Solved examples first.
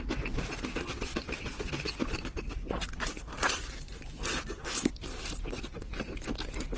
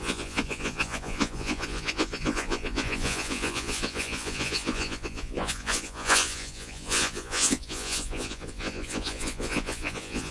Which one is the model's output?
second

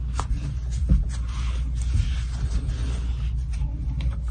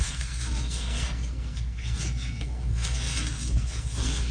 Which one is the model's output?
second